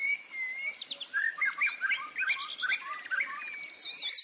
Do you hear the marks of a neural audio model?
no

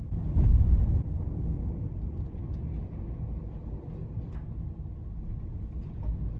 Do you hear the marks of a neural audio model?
no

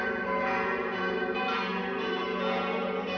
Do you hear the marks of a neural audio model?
no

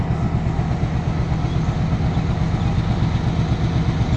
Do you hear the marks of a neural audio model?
no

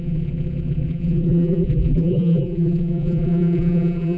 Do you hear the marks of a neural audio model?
yes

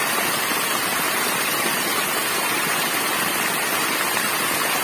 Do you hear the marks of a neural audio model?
no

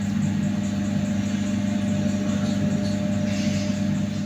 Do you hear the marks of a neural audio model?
no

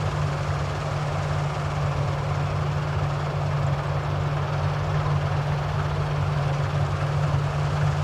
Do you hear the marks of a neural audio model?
no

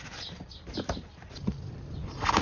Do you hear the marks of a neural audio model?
no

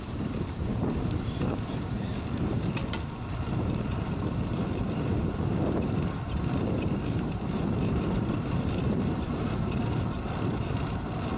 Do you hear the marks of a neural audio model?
yes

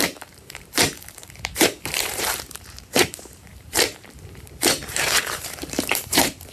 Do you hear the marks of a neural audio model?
yes